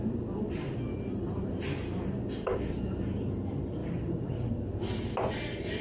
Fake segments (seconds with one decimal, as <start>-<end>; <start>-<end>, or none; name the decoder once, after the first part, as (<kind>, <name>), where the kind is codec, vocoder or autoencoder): 0.9-1.7 (vocoder, BigVGAN v2); 3.8-4.5